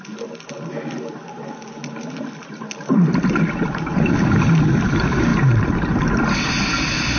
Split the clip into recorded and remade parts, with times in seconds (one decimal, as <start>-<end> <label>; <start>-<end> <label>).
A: 0.0-7.2 recorded

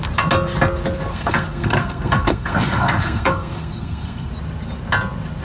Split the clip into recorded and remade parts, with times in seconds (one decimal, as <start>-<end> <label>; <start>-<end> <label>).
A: 0.0-1.1 recorded; 1.1-4.3 remade; 4.3-5.4 recorded